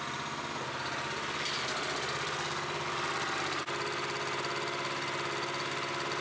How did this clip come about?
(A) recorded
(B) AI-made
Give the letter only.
A